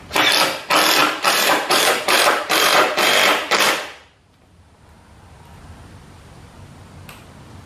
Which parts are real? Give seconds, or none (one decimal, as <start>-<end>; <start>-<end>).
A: 0.0-1.0; 5.0-7.7